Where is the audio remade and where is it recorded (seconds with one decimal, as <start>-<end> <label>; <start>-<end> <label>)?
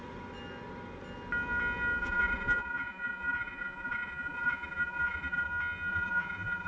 0.0-2.0 recorded; 2.0-5.5 remade; 5.5-5.9 recorded; 5.9-6.7 remade